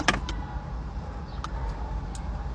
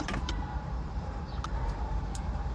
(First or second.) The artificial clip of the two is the second